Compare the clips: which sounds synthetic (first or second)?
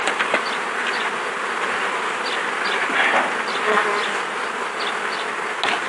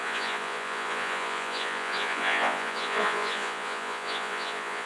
second